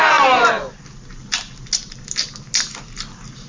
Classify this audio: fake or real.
real